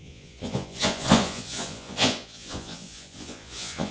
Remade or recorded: remade